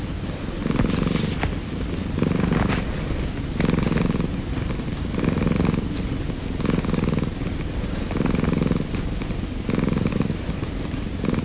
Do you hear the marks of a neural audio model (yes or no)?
no